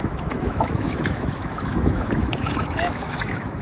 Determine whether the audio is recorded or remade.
remade